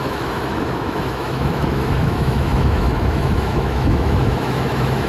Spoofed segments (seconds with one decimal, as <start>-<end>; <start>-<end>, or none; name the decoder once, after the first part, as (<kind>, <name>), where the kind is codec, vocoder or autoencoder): 0.0-5.1 (autoencoder, DAC-VAE)